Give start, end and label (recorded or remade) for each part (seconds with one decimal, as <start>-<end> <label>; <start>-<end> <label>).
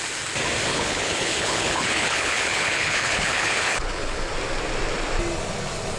0.0-0.7 recorded; 0.7-4.3 remade; 4.3-6.0 recorded